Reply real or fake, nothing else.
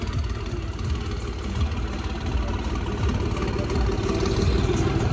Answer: real